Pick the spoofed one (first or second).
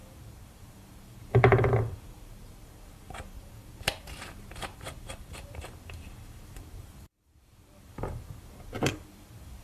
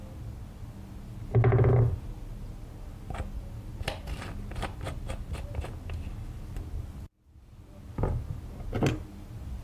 first